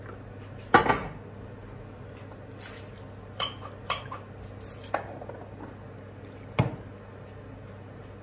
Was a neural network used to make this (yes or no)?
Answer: no